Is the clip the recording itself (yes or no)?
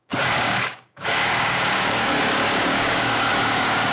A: no